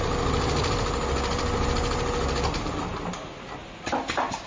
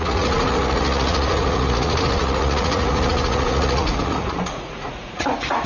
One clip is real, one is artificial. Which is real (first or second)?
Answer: first